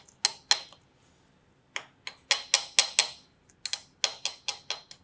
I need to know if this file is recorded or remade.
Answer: recorded